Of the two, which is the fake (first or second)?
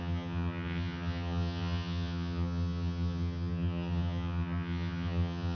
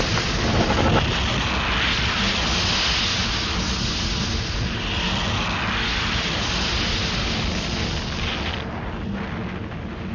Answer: first